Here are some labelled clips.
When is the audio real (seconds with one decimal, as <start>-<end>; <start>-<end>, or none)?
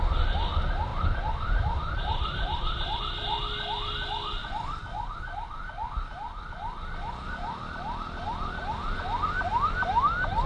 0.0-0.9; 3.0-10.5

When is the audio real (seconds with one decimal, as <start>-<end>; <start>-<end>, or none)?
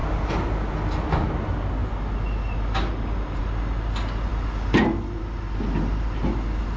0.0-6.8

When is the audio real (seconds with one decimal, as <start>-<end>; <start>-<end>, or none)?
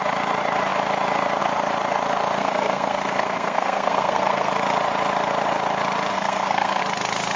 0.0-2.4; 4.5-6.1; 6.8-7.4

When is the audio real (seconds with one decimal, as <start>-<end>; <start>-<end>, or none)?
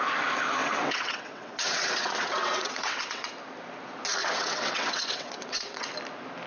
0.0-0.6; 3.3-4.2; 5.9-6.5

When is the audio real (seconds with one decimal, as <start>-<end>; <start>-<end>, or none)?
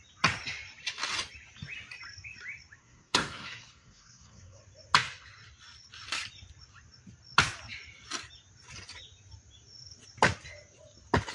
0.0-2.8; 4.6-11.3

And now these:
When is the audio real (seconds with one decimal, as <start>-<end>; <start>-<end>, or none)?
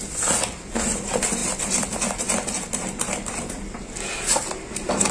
0.0-5.1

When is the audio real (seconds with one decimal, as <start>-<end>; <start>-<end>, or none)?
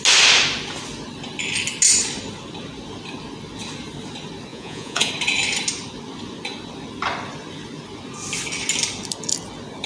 0.0-4.5; 5.1-9.9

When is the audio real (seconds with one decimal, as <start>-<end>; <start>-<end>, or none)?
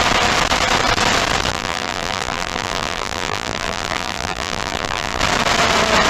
0.0-1.5; 5.2-6.1